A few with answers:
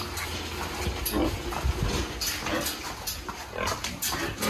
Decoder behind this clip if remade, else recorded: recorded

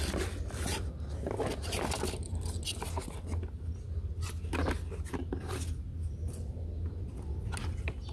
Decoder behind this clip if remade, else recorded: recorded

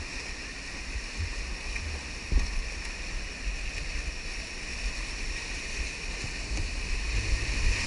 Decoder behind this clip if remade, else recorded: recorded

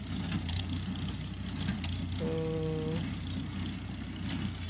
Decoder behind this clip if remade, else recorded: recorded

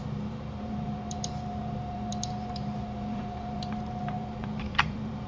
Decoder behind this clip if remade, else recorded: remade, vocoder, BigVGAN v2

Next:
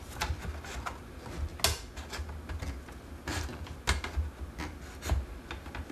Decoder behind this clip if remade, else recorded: recorded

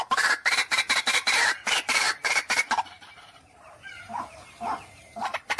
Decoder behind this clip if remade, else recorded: remade, vocoder, BigVGAN v2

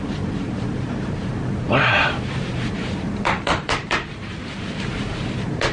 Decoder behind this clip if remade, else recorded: remade, vocoder, BigVGAN v2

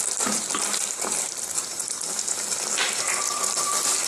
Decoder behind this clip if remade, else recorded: remade, vocoder, BigVGAN v2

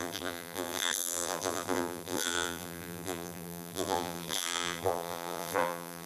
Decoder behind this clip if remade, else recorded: remade, vocoder, BigVGAN v2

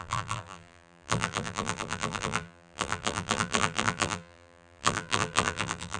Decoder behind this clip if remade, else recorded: remade, vocoder, BigVGAN v2